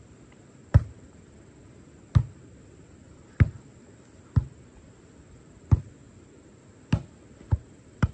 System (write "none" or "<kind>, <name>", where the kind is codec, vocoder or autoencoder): none